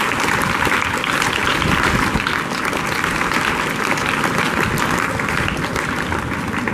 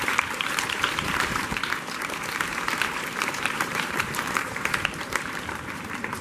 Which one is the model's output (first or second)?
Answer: second